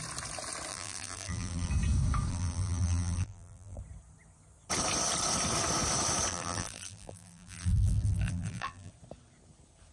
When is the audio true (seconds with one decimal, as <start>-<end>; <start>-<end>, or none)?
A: 0.0-0.7; 1.7-2.3; 3.8-6.3; 8.9-9.9